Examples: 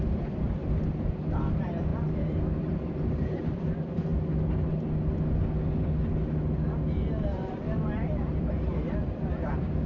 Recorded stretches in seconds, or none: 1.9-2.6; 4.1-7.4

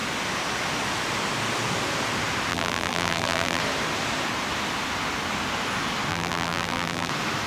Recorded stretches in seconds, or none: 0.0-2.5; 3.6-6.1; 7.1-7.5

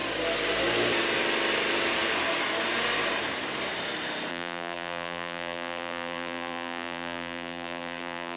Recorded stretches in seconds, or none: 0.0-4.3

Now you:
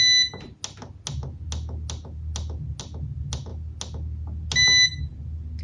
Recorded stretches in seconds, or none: 0.0-5.6